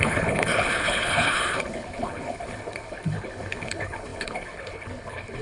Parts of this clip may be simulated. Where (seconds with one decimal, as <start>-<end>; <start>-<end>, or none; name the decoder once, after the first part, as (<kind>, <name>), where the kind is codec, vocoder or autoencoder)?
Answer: 0.0-5.4 (codec, HILCodec)